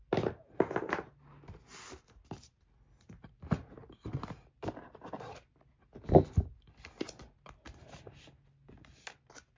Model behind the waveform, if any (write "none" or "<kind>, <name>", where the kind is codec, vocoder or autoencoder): none